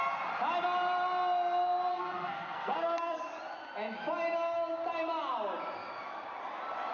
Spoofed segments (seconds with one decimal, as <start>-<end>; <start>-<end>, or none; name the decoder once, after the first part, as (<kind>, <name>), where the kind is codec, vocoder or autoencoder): 1.9-3.2 (codec, SNAC)